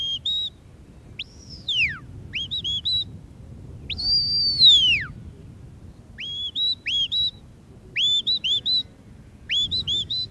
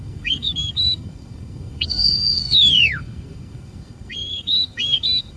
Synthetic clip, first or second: second